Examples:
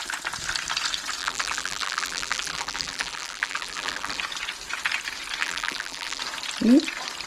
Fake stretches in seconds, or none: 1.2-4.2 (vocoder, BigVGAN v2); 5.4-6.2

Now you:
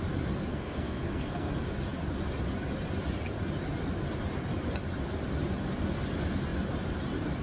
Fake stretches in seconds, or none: 0.5-1.5 (codec, SNAC)